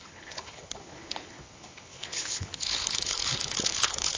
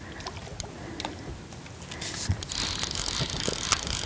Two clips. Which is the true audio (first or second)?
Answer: second